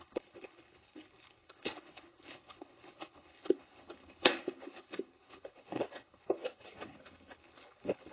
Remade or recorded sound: remade